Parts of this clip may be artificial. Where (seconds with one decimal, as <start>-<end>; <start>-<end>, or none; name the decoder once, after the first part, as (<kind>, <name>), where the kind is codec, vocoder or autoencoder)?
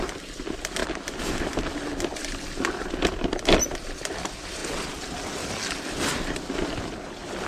none